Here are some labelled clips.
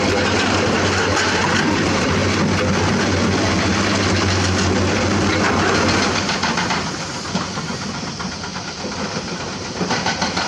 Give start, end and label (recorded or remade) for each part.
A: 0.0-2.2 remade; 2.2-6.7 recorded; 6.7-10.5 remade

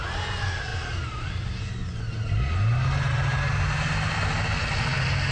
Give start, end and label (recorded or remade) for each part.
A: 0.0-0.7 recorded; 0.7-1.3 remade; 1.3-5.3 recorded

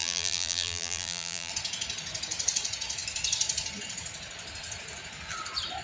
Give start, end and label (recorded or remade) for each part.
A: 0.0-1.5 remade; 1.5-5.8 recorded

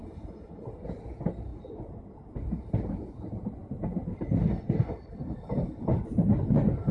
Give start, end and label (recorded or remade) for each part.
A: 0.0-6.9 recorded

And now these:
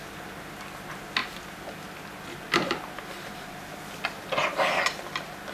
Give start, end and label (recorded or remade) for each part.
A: 0.0-5.5 recorded

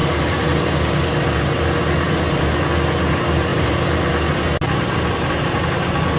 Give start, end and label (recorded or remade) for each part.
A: 0.0-2.5 remade; 2.5-3.5 recorded; 3.5-4.1 remade; 4.1-6.2 recorded

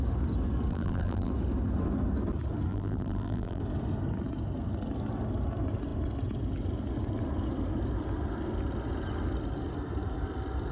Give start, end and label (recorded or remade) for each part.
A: 0.0-0.7 recorded; 0.7-1.3 remade; 1.3-2.7 recorded; 2.7-3.6 remade; 3.6-10.7 recorded

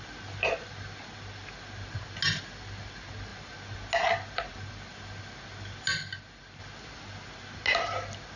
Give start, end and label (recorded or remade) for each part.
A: 0.0-8.4 recorded